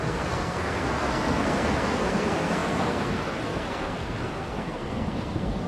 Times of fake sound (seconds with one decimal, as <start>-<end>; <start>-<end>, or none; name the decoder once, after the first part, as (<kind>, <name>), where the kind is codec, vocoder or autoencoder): 0.0-5.7 (codec, SNAC)

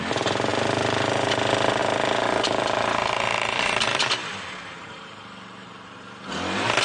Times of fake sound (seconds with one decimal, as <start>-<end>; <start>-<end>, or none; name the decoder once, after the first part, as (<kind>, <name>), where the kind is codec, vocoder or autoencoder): 0.5-1.3 (vocoder, BigVGAN v2); 1.8-5.9

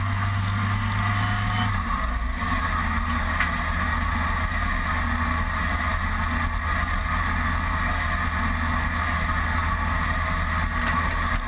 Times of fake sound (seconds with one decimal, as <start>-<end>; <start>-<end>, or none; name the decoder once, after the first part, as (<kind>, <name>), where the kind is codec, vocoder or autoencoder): none

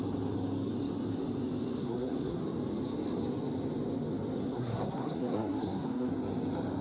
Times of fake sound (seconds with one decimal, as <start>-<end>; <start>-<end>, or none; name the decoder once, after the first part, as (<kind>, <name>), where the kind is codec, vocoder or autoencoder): 1.8-2.4 (codec, SNAC); 4.4-6.1

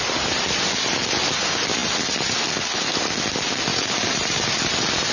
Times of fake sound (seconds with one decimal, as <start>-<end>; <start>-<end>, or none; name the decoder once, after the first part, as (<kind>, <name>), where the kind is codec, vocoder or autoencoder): 3.7-5.1 (vocoder, BigVGAN v2)

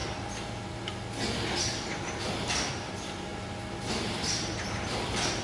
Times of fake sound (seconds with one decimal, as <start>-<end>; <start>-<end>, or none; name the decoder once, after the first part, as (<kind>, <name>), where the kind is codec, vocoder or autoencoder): 2.7-3.3 (vocoder, BigVGAN v2); 3.9-5.4

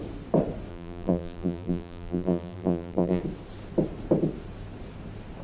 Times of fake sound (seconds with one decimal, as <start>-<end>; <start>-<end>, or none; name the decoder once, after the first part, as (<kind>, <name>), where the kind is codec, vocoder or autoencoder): 0.7-3.2 (vocoder, BigVGAN v2)

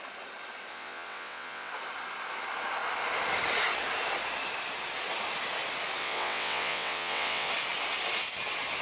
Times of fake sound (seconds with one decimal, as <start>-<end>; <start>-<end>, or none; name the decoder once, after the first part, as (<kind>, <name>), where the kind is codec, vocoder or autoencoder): 0.7-1.7 (vocoder, WaveNeXt); 6.0-7.5